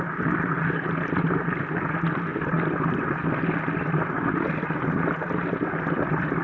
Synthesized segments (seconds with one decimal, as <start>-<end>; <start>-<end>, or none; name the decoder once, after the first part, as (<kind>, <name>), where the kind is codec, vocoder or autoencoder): none